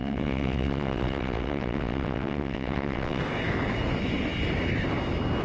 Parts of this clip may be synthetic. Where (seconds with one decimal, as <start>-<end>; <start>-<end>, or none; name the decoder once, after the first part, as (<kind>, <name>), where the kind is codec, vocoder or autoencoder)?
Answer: 0.0-3.2 (vocoder, WaveNeXt)